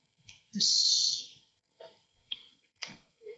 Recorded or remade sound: remade